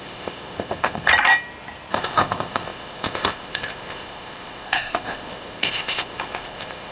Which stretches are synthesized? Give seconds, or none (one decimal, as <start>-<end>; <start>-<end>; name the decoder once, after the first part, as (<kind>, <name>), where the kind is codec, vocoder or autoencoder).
0.0-1.1 (codec, ZipCodec); 1.9-6.9

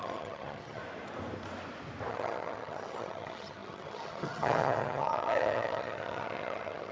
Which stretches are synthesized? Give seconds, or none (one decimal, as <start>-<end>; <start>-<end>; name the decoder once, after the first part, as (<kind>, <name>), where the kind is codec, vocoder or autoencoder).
0.0-0.8 (vocoder, HiFi-GAN); 2.1-6.9

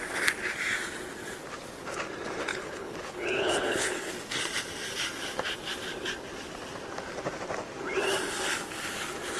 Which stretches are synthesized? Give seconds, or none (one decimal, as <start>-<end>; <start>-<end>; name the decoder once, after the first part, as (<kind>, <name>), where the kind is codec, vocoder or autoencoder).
2.5-4.1 (codec, HILCodec)